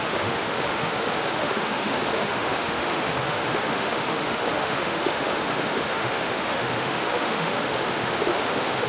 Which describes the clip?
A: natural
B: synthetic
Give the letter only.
B